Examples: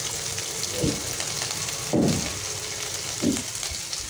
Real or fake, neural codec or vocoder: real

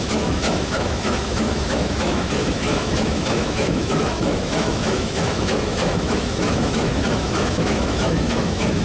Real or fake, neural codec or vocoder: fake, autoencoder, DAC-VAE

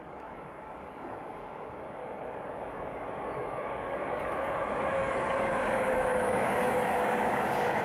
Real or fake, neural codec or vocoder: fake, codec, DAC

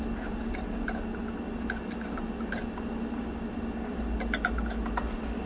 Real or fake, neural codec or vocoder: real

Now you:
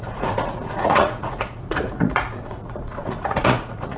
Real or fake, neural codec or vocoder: fake, vocoder, Vocos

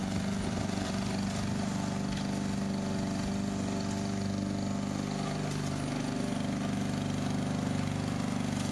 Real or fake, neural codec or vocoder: real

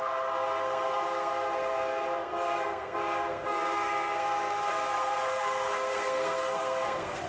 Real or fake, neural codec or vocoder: fake, codec, SNAC